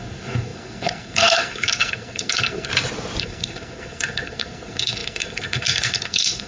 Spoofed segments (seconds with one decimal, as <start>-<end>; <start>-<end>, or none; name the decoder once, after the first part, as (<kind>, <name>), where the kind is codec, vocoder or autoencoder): 0.0-2.7 (codec, SNAC); 3.2-6.5